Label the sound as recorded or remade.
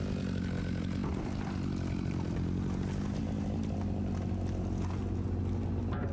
recorded